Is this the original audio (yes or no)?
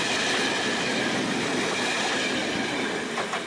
yes